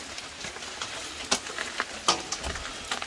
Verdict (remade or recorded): recorded